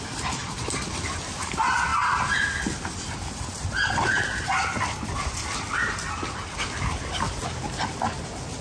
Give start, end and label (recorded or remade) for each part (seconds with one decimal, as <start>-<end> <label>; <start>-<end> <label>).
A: 0.0-8.6 recorded